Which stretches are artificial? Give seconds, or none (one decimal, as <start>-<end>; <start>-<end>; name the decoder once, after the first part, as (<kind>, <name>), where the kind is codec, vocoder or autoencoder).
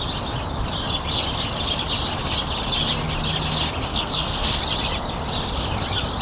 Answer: 3.9-4.6 (codec, SNAC)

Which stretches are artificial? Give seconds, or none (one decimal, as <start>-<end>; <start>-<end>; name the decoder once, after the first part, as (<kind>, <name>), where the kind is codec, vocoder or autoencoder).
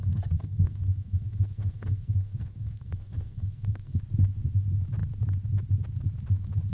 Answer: 0.0-4.0 (codec, SNAC)